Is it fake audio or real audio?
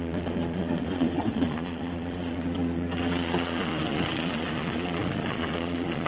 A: fake